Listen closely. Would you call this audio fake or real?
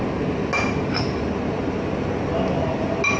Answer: real